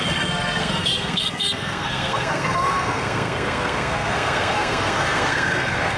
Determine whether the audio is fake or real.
fake